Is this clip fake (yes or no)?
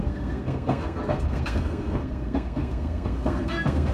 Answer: yes